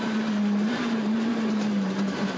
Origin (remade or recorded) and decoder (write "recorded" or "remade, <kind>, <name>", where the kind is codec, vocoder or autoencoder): remade, vocoder, BigVGAN v2